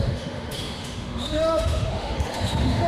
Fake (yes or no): yes